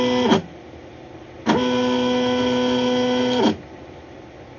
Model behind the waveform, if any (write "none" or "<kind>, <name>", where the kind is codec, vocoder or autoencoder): none